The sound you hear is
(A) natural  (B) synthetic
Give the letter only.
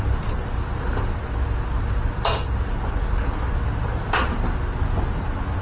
A